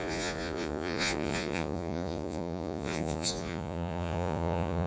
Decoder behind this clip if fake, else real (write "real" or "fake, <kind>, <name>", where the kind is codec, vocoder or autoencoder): fake, vocoder, Vocos